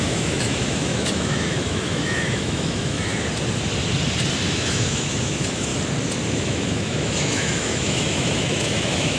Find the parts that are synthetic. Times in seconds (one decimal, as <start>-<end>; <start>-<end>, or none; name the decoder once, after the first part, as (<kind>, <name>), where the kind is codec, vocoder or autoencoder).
0.0-3.1 (autoencoder, DAC-VAE); 4.5-5.7; 6.3-9.2